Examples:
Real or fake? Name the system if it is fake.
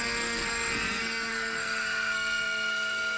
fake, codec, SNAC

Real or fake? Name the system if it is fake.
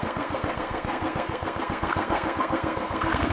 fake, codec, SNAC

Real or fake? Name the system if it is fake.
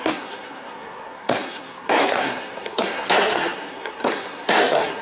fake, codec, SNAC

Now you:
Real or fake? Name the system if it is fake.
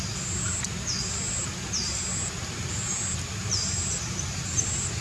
real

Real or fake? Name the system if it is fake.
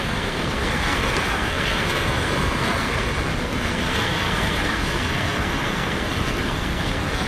fake, codec, SNAC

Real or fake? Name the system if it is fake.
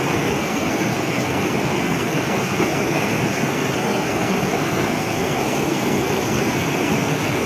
fake, codec, SNAC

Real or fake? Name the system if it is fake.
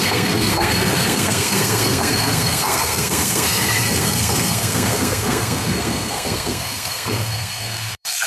fake, codec, SNAC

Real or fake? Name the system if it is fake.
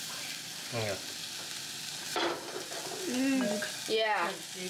real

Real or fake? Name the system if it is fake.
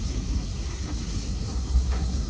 fake, codec, SNAC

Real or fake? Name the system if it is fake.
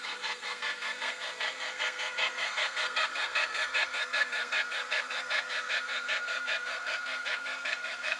fake, codec, SNAC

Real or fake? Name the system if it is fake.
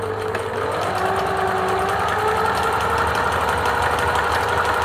real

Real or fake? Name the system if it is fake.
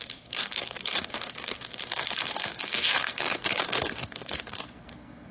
fake, codec, SNAC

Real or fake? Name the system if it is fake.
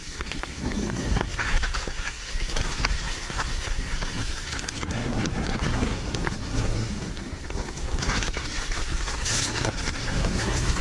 fake, codec, SNAC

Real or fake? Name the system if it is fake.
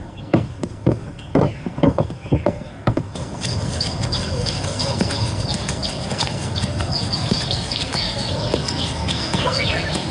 fake, codec, SNAC